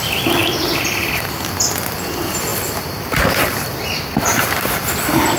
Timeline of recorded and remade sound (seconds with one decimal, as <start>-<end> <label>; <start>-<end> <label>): 0.0-5.4 recorded